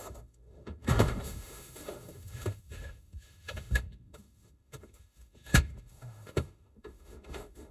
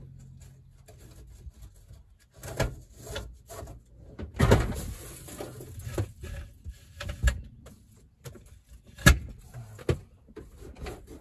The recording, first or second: second